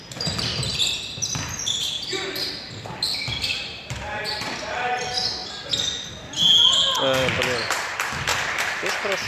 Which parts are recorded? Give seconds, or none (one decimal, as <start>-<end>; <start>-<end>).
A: 0.0-1.8; 2.5-3.5; 4.8-9.3